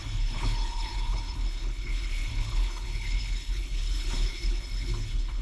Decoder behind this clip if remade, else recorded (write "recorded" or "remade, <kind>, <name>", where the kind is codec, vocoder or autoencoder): remade, codec, HILCodec